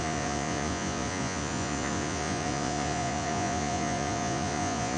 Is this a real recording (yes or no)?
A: no